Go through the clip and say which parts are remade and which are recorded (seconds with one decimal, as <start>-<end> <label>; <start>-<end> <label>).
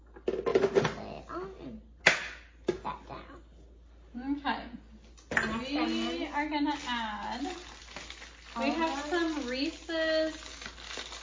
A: 0.0-11.2 recorded